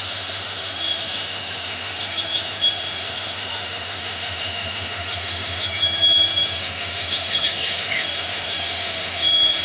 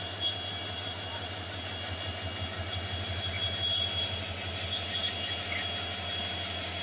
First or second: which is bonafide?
second